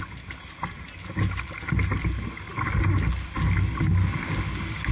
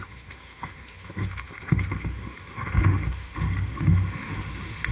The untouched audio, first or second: first